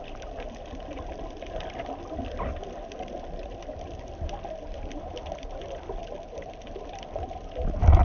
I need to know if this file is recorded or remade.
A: recorded